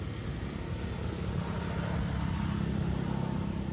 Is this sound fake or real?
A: real